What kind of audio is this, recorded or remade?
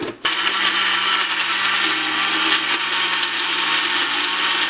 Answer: recorded